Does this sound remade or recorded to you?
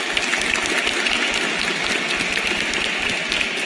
recorded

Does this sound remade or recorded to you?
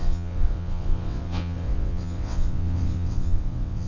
remade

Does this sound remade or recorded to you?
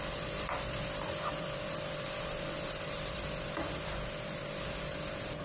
remade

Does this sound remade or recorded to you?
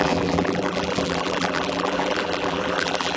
remade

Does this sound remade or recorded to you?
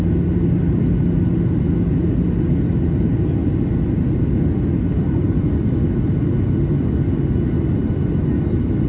recorded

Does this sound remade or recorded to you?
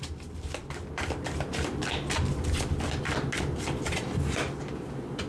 recorded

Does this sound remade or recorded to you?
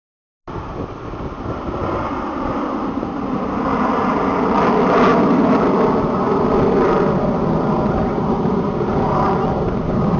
recorded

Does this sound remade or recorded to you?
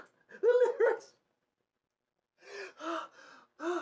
recorded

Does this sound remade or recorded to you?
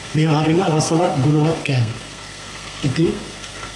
remade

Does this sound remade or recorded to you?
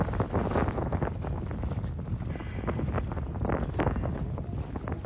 recorded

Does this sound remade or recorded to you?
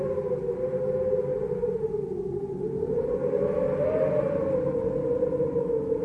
recorded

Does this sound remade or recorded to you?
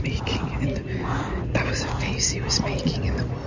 recorded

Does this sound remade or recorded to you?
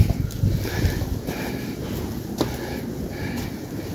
recorded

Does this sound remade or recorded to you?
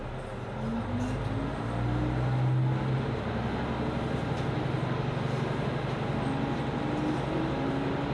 recorded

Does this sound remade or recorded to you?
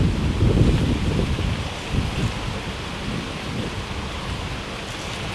recorded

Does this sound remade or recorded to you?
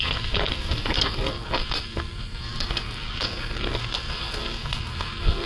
remade